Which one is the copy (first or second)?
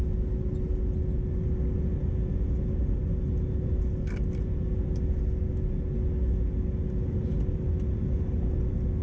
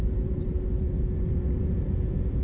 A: second